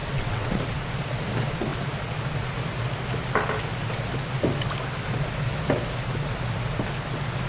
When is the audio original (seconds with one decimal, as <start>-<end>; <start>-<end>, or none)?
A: 0.6-7.5